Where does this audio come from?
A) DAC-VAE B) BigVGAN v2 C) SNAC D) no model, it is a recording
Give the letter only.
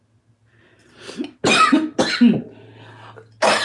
D